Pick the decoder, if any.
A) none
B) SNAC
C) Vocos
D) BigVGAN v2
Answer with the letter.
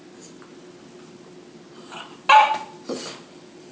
A